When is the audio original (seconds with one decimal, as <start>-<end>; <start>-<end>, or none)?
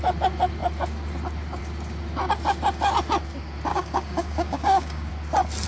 0.0-3.7; 5.1-5.7